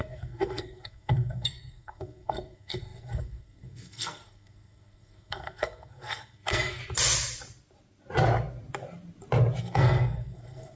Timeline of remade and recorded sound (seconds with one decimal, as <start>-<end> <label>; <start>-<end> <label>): 0.0-6.8 remade; 6.8-9.6 recorded; 9.6-10.8 remade